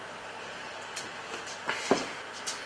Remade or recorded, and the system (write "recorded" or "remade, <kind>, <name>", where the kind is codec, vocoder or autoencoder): recorded